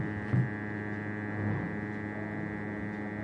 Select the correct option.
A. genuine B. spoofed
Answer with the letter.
A